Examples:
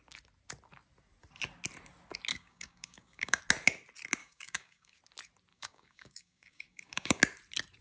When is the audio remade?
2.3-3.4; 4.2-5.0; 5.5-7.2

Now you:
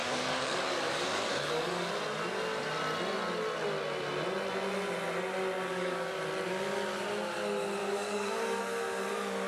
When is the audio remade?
0.0-1.9; 5.7-6.2; 7.8-8.6

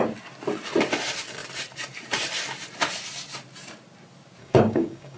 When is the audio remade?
4.4-5.2

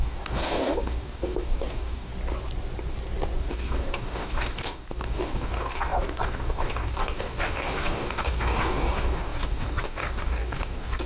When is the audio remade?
0.0-2.1; 3.4-11.1

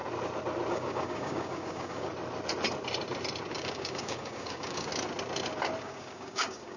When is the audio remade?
0.7-2.1; 3.5-4.9; 5.8-6.8

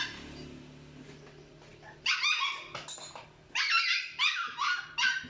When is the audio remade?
none

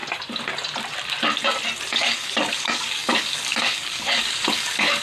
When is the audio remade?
1.9-5.0